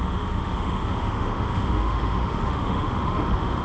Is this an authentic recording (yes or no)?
no